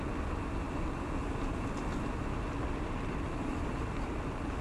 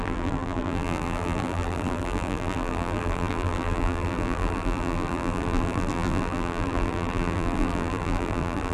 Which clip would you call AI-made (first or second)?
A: second